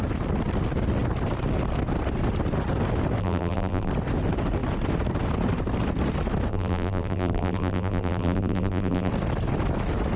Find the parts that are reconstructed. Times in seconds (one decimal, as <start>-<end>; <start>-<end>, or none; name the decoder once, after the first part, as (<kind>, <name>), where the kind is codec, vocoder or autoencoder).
3.2-3.9 (vocoder, BigVGAN v2); 6.5-9.1